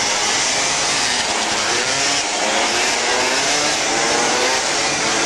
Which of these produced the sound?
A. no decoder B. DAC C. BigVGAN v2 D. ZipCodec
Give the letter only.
C